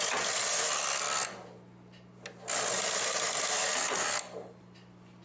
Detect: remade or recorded recorded